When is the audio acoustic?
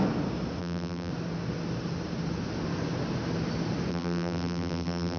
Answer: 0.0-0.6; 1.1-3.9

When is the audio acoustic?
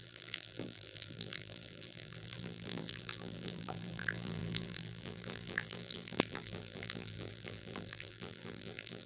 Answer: none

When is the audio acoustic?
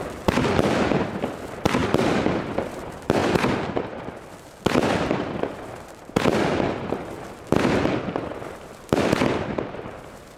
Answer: 3.2-8.0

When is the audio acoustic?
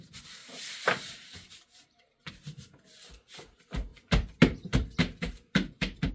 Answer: 0.0-0.4; 2.3-6.1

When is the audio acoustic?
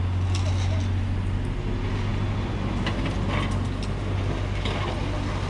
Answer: 0.0-5.5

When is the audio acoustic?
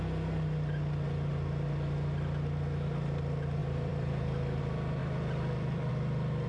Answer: 0.0-3.6; 4.6-5.0; 5.9-6.5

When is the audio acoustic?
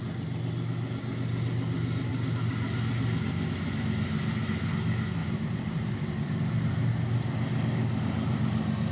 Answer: 0.0-5.2; 6.4-8.9